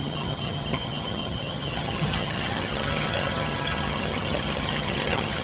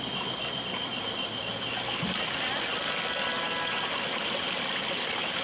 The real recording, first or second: second